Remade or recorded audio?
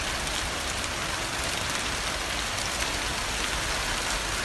recorded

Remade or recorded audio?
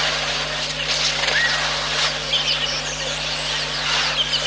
recorded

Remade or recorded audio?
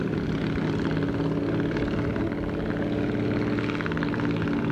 recorded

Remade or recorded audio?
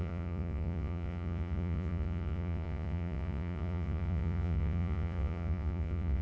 remade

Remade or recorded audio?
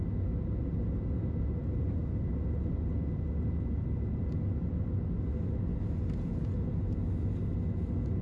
recorded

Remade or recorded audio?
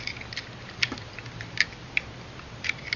recorded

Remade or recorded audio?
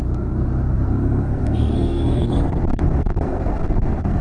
remade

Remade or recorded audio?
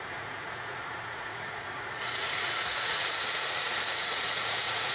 remade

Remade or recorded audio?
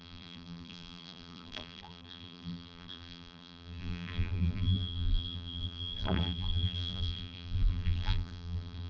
remade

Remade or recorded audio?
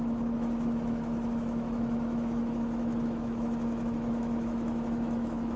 remade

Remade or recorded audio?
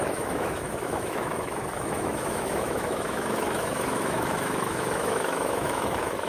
remade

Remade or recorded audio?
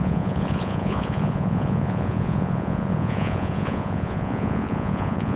remade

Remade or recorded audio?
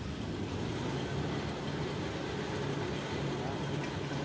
recorded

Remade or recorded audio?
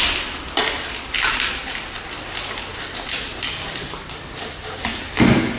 recorded